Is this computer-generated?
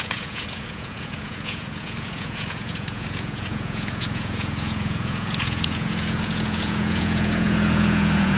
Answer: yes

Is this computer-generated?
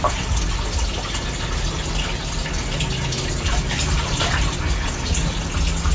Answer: no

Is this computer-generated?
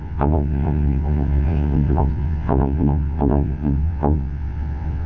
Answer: yes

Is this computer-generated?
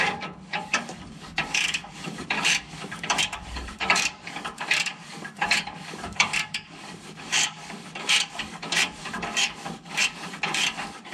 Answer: yes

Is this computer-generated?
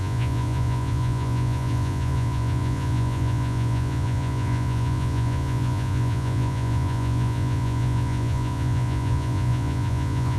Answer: yes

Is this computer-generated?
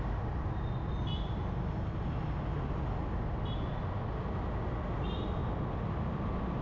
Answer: no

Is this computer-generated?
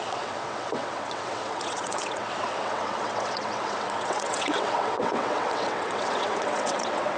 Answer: yes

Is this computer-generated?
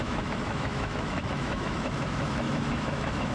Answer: yes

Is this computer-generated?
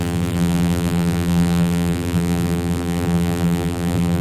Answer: yes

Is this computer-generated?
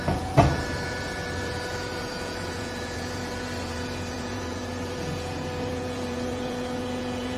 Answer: yes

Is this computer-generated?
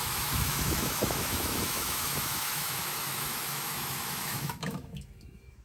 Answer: yes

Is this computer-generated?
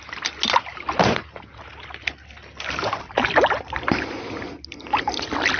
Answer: no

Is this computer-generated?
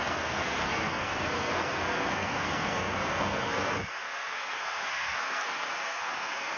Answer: yes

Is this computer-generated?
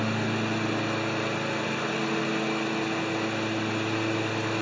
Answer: no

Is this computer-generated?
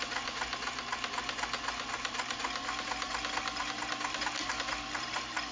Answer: no